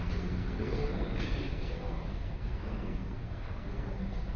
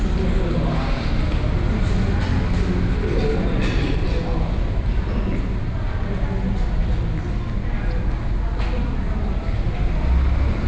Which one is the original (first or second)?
second